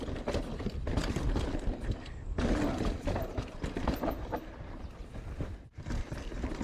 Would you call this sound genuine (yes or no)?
no